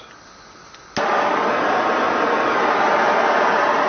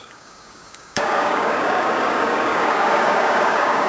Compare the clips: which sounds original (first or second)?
first